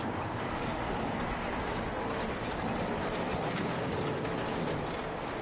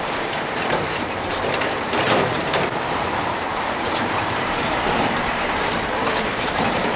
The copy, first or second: second